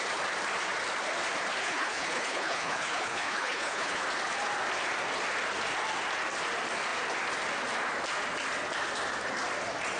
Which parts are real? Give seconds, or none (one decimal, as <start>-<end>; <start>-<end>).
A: 0.0-1.6; 4.0-10.0